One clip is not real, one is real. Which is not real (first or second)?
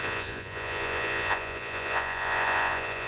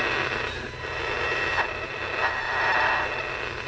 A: first